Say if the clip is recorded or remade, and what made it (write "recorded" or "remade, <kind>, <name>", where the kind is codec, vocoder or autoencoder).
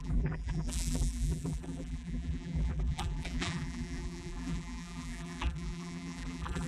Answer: remade, vocoder, BigVGAN v2